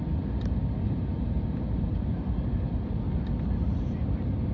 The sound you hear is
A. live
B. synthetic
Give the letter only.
A